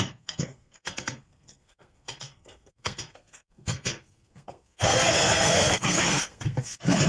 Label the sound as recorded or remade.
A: remade